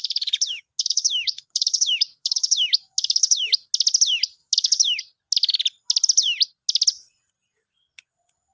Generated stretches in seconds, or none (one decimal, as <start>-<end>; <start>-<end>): 0.8-3.7; 4.4-5.0

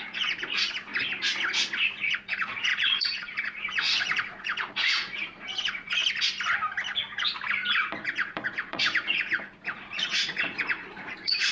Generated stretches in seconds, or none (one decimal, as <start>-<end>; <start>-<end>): 0.0-0.9; 2.1-6.0; 8.0-11.5

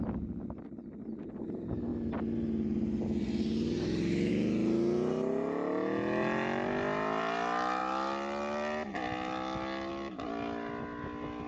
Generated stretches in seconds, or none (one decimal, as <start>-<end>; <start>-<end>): none

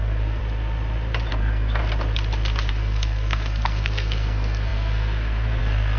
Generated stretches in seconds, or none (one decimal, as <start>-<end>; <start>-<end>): 0.0-0.4; 1.3-1.8; 2.7-6.0

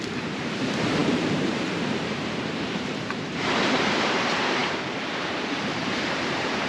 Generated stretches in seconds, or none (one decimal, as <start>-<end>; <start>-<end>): 0.0-6.7

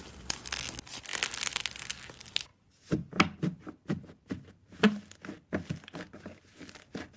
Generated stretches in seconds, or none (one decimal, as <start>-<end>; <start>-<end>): none